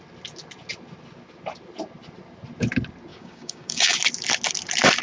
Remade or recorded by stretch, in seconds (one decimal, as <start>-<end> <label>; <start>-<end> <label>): 0.0-3.1 recorded; 3.1-4.0 remade; 4.0-5.0 recorded